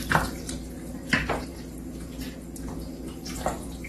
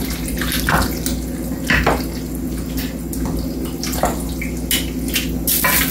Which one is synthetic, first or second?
first